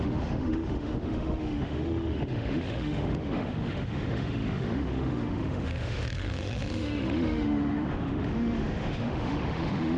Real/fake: fake